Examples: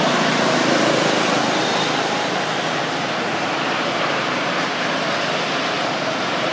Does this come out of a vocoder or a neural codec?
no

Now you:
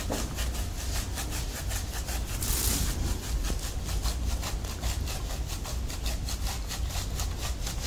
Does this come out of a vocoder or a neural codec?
no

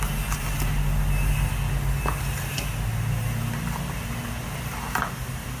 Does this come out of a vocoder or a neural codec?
no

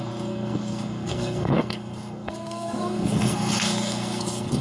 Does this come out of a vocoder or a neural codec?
yes